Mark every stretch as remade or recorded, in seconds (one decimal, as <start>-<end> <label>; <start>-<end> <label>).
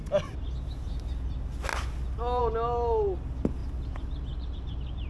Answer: 0.0-5.1 recorded